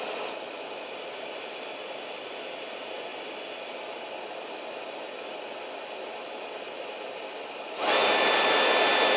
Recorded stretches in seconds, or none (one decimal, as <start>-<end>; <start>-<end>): 0.0-9.2